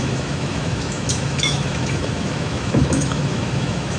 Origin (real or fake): fake